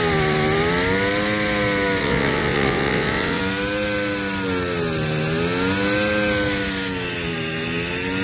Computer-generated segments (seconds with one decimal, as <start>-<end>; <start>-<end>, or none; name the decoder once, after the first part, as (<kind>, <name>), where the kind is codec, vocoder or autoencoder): 2.0-3.4 (vocoder, WaveNeXt)